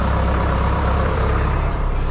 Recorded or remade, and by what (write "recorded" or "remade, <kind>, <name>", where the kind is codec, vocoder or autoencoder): remade, vocoder, BigVGAN v2